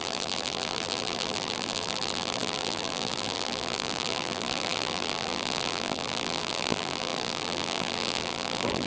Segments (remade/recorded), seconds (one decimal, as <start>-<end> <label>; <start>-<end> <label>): 0.0-8.9 remade